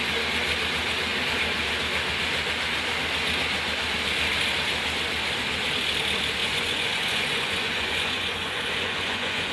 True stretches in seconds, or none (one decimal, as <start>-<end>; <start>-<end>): 0.0-6.4